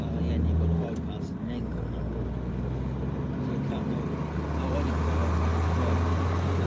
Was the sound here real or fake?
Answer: real